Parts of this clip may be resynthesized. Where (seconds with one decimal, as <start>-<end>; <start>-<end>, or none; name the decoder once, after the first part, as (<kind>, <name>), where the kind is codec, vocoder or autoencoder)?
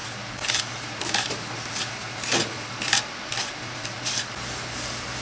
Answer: none